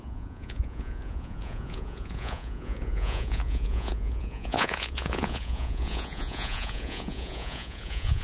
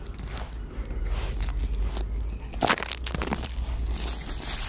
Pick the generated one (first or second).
first